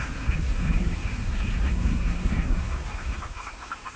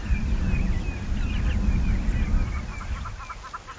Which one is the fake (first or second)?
first